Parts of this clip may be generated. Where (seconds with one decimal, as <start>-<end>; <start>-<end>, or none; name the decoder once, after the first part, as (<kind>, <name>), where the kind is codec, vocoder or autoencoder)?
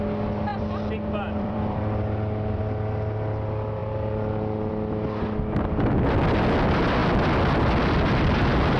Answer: 0.5-2.6 (vocoder, BigVGAN v2); 3.8-4.7